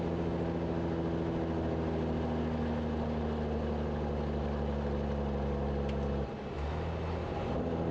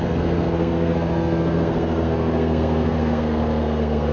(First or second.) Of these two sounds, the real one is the first